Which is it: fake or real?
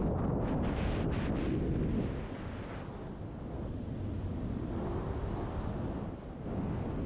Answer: real